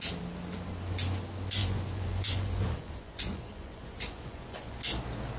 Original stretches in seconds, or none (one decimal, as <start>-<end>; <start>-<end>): 0.0-1.6; 4.8-5.4